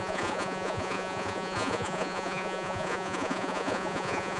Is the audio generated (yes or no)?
yes